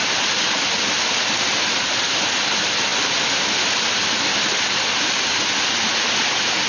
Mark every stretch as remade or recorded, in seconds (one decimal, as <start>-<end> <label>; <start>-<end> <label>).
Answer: 0.0-6.7 recorded